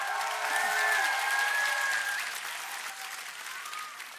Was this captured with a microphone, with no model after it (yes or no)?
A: yes